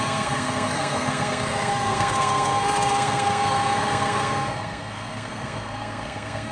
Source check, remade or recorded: remade